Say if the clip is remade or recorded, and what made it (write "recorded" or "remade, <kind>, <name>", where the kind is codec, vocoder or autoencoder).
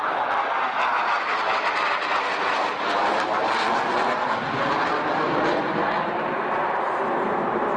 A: recorded